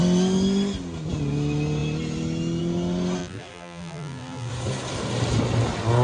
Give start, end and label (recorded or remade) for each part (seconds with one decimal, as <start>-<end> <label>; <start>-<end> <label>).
0.0-3.2 recorded; 3.2-4.5 remade; 4.5-6.0 recorded